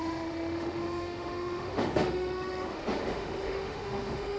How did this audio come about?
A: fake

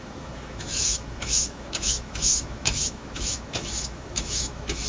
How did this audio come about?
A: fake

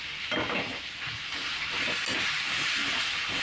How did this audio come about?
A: real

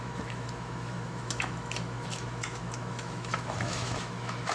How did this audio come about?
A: fake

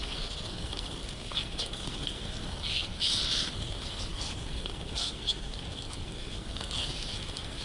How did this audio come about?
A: fake